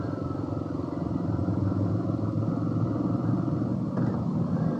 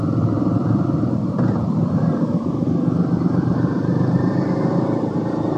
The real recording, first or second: first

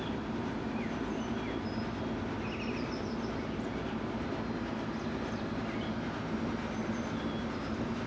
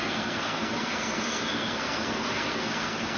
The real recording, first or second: first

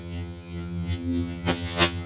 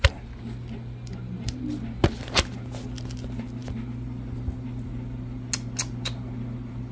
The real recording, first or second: second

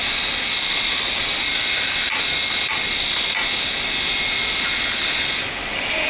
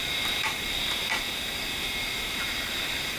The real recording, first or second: first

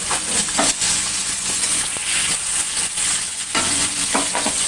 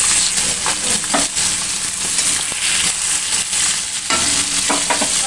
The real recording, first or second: second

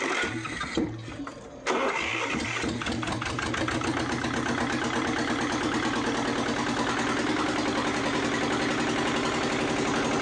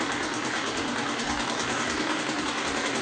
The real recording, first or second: first